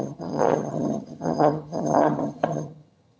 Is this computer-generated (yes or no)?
yes